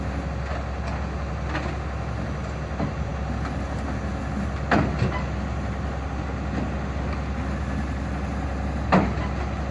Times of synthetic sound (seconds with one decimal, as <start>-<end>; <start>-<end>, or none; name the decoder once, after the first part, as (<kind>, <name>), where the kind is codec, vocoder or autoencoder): none